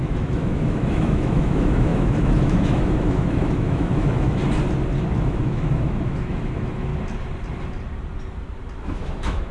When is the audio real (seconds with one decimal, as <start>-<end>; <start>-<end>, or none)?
4.4-5.2; 6.9-8.8